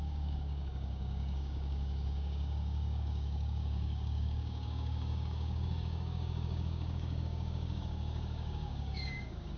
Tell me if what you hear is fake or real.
fake